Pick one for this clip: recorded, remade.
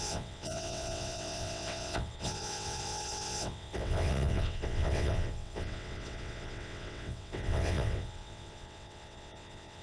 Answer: remade